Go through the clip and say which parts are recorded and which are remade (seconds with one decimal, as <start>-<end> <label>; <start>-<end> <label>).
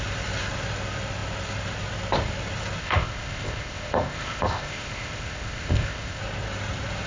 0.0-2.8 recorded; 2.8-6.2 remade; 6.2-7.1 recorded